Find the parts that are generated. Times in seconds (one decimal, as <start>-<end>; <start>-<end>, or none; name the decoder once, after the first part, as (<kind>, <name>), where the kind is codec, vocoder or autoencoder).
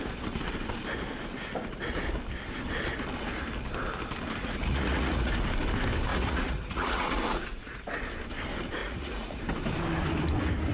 4.4-5.3 (vocoder, Vocos); 6.1-7.8; 8.8-9.4